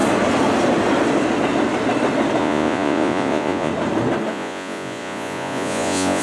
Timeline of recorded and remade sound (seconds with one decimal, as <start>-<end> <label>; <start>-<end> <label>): 0.0-2.4 recorded; 2.4-3.7 remade; 3.7-4.3 recorded; 4.3-6.2 remade